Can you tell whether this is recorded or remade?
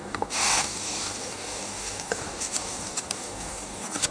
remade